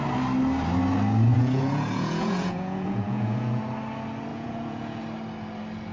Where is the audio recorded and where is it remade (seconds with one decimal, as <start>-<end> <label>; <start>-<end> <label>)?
0.0-1.3 recorded; 1.3-3.6 remade; 3.6-4.3 recorded; 4.3-5.0 remade; 5.0-5.9 recorded